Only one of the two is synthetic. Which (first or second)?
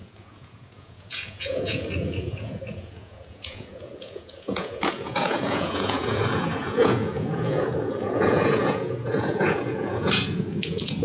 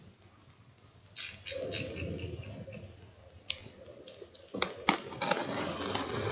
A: first